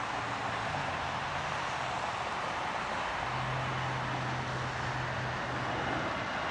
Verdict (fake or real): real